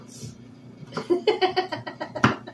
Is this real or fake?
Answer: fake